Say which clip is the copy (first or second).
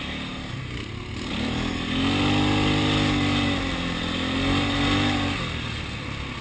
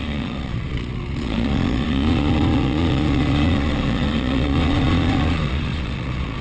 second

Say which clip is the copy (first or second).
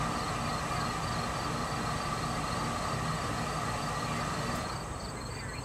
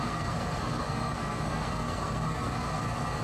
second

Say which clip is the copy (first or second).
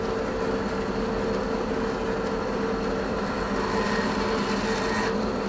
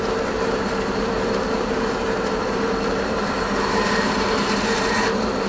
second